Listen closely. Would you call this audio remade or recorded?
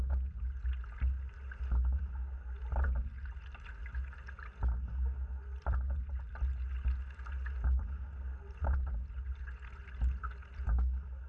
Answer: recorded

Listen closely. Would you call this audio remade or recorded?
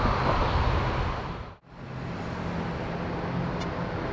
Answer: recorded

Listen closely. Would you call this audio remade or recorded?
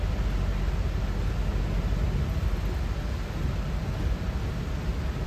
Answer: recorded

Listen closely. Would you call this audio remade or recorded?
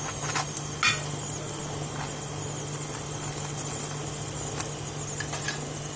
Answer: recorded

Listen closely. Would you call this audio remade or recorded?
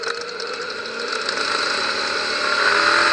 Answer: recorded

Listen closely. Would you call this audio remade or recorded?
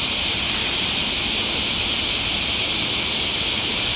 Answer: recorded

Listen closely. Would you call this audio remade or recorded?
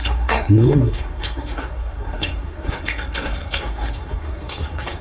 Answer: remade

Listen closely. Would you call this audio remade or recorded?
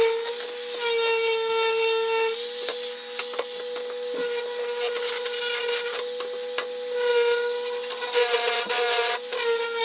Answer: recorded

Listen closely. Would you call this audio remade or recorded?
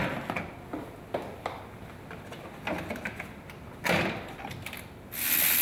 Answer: recorded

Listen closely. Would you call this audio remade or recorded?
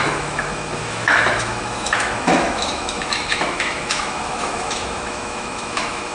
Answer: remade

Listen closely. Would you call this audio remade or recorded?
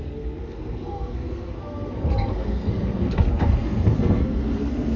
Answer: remade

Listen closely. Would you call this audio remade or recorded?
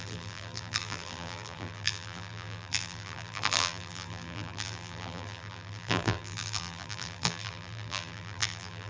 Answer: remade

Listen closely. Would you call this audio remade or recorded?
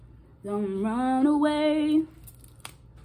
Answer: recorded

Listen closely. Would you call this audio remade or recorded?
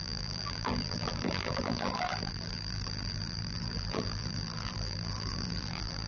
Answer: remade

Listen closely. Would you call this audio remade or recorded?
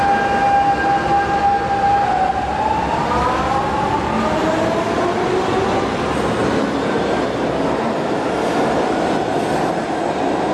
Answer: recorded